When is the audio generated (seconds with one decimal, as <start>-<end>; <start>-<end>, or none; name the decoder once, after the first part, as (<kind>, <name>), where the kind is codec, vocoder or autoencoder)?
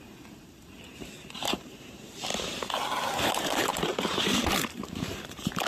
0.0-2.3 (vocoder, BigVGAN v2); 3.2-5.7